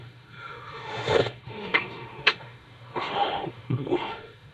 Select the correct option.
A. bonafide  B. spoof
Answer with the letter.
B